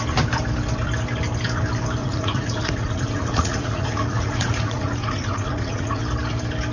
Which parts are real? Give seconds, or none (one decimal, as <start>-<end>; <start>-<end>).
0.0-2.0; 6.0-6.7